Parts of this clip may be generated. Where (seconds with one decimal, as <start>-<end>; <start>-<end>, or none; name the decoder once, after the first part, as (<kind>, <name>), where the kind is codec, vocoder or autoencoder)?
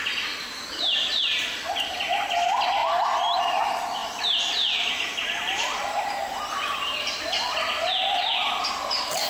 0.4-1.1 (vocoder, BigVGAN v2); 4.0-7.2